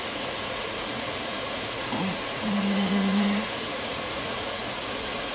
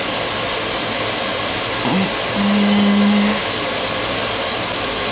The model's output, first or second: first